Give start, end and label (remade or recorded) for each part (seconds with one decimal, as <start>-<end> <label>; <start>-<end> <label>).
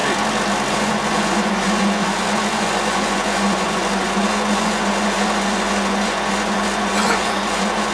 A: 0.0-0.7 recorded; 0.7-7.9 remade